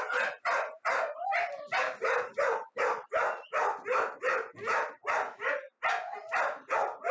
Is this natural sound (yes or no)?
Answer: yes